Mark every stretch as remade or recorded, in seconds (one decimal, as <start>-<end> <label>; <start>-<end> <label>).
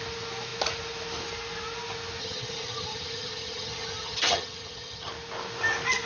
0.0-2.2 recorded; 2.2-5.1 remade; 5.1-6.1 recorded